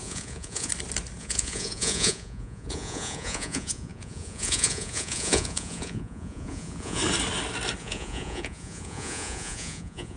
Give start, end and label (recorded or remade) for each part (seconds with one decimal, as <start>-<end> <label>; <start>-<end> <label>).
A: 0.0-0.7 remade; 0.7-1.2 recorded; 1.2-7.0 remade; 7.0-7.8 recorded; 7.8-10.2 remade